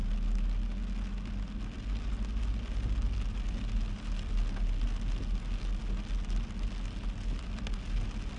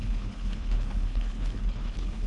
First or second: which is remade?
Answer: second